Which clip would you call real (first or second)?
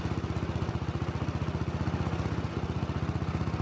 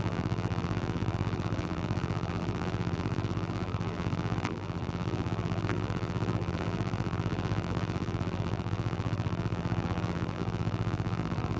first